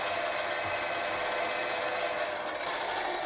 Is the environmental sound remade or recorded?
recorded